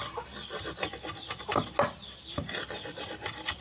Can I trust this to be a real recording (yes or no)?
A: yes